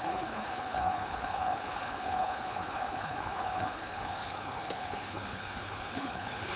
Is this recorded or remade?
remade